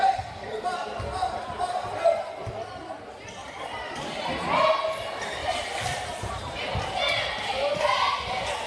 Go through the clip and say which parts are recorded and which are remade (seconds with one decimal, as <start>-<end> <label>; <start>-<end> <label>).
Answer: 0.0-3.4 recorded; 3.4-4.7 remade; 4.7-5.4 recorded; 5.4-6.6 remade; 6.6-8.7 recorded